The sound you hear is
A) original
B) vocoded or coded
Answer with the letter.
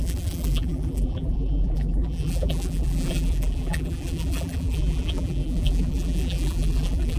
B